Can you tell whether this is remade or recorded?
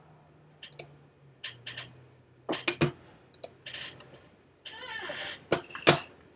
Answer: recorded